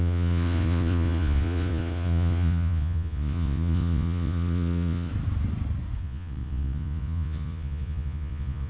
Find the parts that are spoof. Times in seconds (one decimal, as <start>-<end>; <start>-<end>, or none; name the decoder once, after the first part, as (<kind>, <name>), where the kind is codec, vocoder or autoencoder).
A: 0.0-5.1 (vocoder, Vocos); 6.0-8.7